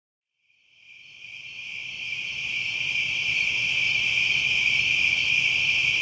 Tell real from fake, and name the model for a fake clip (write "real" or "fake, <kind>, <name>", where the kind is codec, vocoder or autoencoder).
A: fake, vocoder, BigVGAN v2